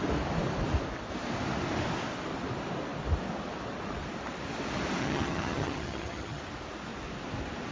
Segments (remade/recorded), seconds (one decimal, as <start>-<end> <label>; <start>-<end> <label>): 0.0-5.0 recorded; 5.0-6.4 remade; 6.4-7.7 recorded